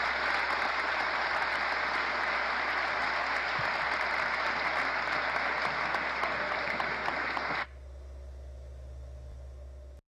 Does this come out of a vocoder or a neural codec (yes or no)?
no